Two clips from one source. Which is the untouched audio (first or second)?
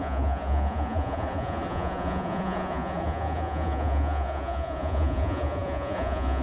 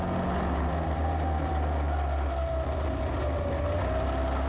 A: second